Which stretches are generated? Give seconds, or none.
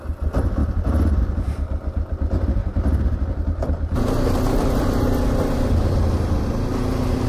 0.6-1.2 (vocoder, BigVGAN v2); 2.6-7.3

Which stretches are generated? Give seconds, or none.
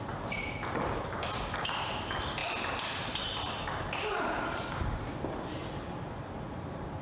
2.4-4.8 (vocoder, BigVGAN v2)